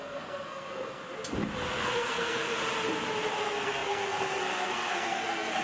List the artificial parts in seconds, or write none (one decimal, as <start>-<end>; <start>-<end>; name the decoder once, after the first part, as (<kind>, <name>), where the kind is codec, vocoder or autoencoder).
0.0-1.0 (codec, SNAC); 1.7-2.5; 3.4-5.6

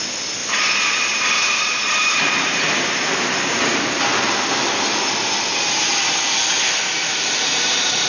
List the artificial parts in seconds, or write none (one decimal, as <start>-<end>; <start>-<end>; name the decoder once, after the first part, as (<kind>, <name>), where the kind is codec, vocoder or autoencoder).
0.4-4.4 (vocoder, BigVGAN v2); 7.1-8.1

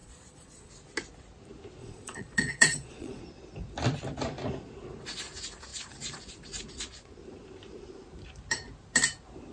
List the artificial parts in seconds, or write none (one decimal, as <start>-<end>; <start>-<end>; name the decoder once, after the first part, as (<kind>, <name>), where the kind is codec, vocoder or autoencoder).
0.0-0.7 (vocoder, Vocos); 1.8-3.2